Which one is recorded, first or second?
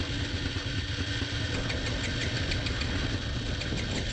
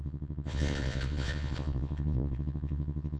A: first